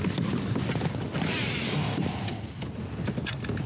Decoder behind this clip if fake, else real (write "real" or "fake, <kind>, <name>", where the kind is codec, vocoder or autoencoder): real